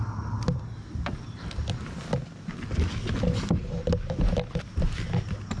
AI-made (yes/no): no